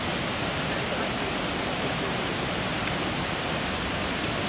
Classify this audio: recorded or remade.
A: remade